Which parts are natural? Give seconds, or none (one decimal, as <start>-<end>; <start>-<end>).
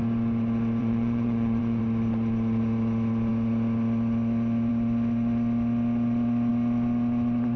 0.0-0.8; 1.8-7.6